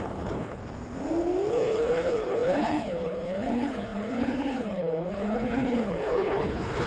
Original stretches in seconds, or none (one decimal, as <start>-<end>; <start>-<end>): 0.6-1.5